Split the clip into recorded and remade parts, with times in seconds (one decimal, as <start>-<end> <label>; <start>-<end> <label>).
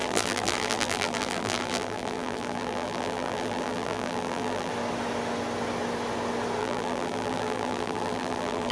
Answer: 0.0-4.7 remade; 4.7-6.6 recorded; 6.6-8.7 remade